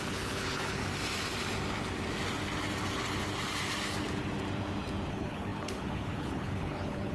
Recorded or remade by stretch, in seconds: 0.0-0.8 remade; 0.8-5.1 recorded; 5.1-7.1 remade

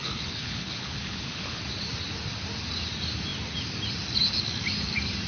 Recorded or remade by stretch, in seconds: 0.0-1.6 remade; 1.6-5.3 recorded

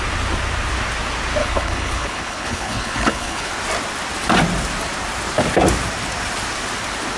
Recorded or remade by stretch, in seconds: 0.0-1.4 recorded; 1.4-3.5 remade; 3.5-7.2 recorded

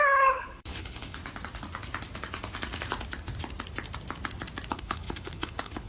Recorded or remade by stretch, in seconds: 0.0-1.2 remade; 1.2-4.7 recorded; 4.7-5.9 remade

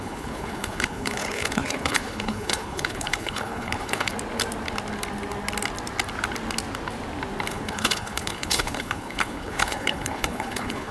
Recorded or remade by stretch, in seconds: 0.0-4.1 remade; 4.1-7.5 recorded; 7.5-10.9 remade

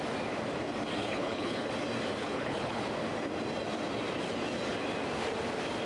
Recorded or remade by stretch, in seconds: 0.0-1.0 recorded; 1.0-1.7 remade; 1.7-2.2 recorded; 2.2-2.8 remade; 2.8-5.9 recorded